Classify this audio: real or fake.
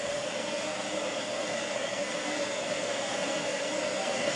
fake